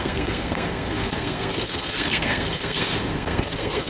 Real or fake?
fake